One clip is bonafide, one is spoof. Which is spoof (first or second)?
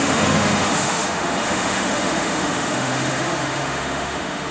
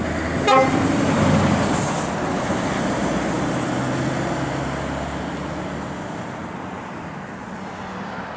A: first